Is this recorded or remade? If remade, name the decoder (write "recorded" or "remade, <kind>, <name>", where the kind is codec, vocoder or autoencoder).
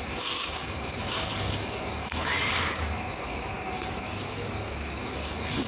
remade, codec, DAC